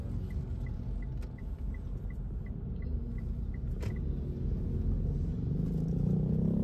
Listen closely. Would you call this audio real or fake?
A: real